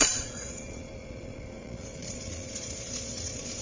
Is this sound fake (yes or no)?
yes